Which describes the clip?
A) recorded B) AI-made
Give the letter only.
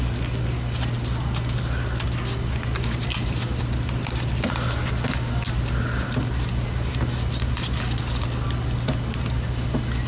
A